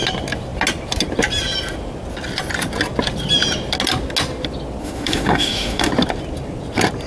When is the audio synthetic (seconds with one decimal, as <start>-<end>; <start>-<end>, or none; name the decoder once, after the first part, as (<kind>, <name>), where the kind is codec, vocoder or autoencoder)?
4.8-5.9 (autoencoder, DAC-VAE)